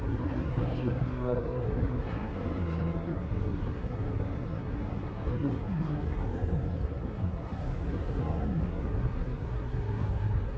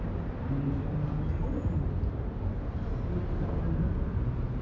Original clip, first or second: second